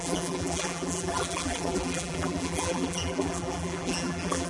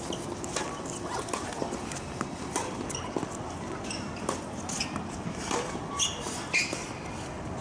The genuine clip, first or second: second